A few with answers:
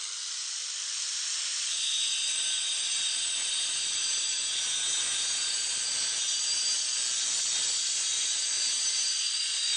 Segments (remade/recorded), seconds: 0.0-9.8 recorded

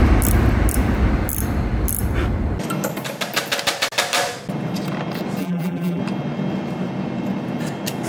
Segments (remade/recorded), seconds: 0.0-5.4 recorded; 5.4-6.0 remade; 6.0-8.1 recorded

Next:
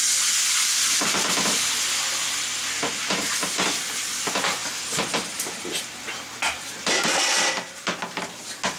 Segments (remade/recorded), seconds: 0.0-8.8 recorded

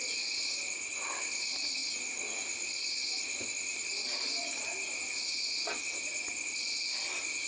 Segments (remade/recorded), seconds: 0.0-7.5 recorded